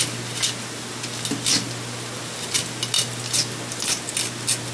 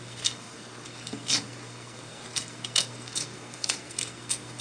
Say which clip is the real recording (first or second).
first